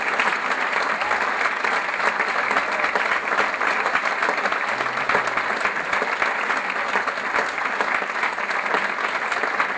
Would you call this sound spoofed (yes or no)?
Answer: no